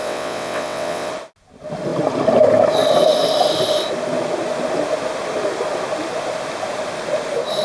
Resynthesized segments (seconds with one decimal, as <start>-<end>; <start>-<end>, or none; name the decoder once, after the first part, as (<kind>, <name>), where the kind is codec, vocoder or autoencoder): 0.0-1.1 (vocoder, WaveNeXt)